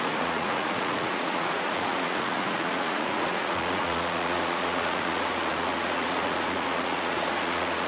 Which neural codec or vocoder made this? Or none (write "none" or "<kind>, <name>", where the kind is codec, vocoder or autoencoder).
vocoder, Vocos